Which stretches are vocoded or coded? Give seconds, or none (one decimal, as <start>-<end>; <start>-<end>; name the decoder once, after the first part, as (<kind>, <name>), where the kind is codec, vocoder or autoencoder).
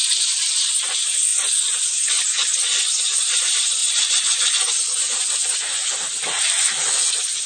none